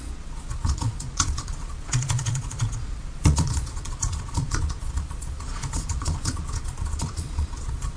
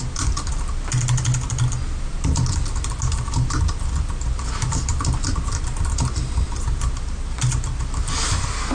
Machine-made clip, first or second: first